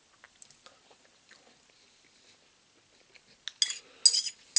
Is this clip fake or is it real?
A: real